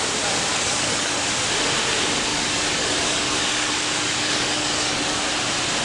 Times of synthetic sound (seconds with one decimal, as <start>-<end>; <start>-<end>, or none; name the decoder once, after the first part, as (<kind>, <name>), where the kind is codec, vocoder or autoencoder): 0.5-1.3 (codec, DAC); 2.3-5.2